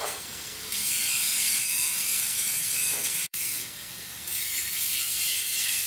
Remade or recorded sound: remade